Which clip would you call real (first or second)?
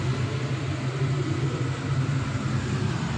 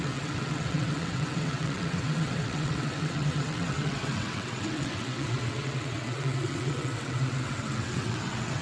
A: first